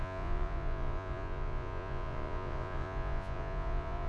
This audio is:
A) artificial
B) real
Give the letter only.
A